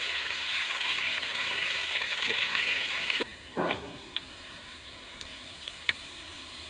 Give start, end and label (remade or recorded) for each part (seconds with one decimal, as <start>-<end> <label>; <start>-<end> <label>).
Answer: 0.0-6.7 remade